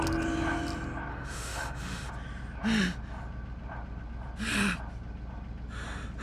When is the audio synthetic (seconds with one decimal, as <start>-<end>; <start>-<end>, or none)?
1.1-2.1